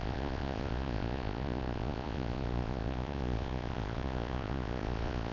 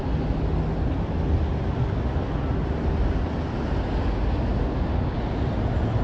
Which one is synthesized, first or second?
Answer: first